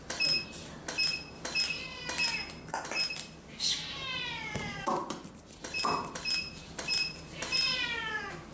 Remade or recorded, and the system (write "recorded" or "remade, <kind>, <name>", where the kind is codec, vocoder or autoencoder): remade, vocoder, BigVGAN v2